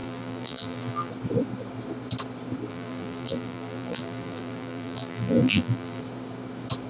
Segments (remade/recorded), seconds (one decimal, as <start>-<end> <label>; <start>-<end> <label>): 0.0-1.1 remade; 1.1-2.7 recorded; 2.7-6.0 remade; 6.0-6.9 recorded